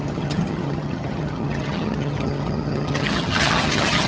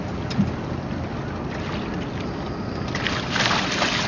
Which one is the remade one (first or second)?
first